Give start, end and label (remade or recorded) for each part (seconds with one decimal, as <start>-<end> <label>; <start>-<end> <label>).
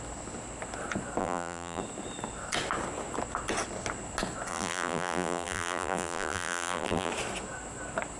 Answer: 0.0-1.2 recorded; 1.2-1.8 remade; 1.8-4.5 recorded; 4.5-7.1 remade; 7.1-8.2 recorded